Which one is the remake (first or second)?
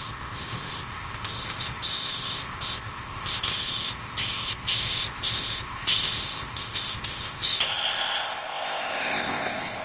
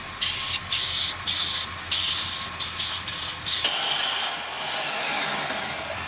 first